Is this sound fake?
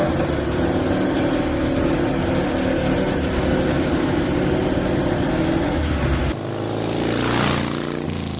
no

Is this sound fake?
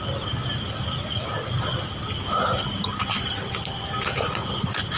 no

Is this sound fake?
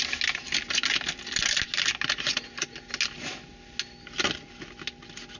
no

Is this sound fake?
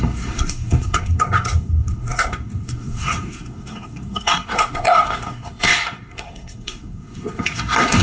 yes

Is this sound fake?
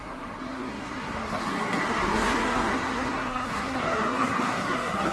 yes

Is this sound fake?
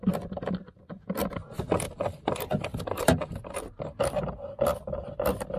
no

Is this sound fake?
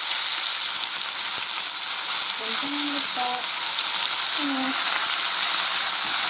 no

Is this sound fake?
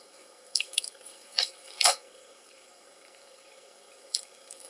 yes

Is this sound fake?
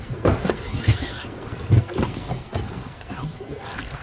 yes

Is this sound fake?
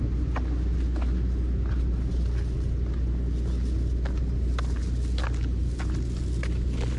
no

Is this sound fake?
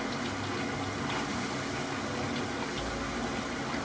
no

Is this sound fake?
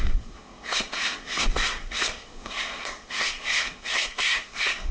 yes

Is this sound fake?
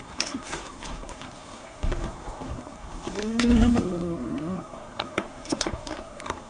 yes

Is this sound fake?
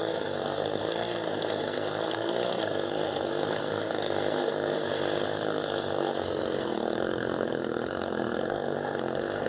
yes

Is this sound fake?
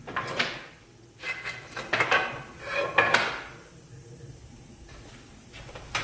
no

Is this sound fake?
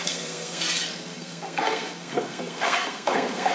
yes